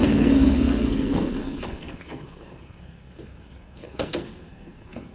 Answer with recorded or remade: remade